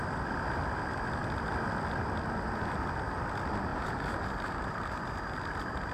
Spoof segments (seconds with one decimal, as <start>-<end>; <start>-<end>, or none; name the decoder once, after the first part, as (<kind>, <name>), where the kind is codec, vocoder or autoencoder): 3.7-4.8 (vocoder, BigVGAN v2)